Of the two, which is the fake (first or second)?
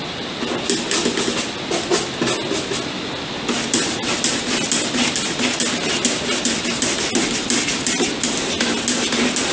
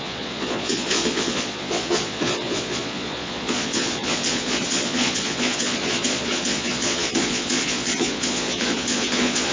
second